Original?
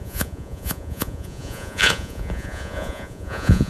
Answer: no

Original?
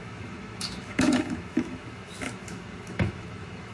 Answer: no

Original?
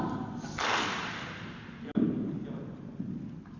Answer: yes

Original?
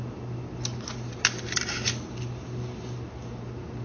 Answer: yes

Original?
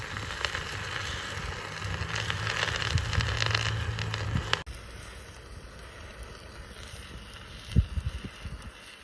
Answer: yes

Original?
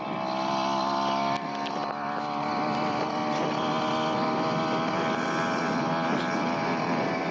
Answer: yes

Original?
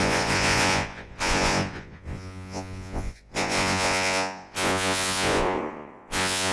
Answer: no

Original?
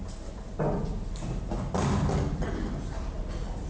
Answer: yes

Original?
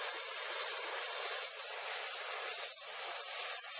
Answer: yes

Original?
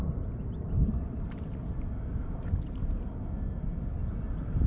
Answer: yes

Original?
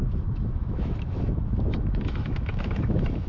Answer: no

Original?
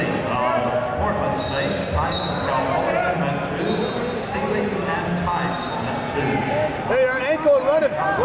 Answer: yes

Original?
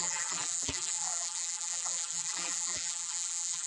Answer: no